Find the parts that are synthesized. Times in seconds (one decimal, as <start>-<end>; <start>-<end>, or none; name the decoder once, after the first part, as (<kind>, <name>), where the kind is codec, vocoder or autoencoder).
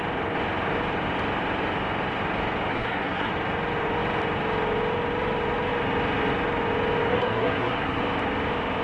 2.7-3.3 (codec, SNAC); 7.1-8.0